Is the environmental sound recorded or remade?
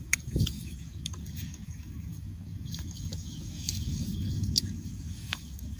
remade